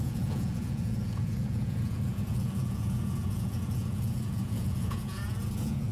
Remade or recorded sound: remade